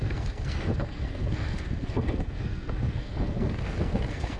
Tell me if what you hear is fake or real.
fake